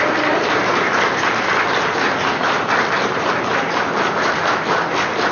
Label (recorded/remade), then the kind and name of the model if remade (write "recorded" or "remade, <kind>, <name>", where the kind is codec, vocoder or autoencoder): recorded